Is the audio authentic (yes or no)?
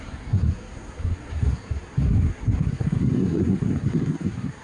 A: no